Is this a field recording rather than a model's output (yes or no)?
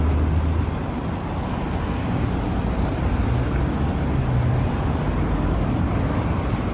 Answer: yes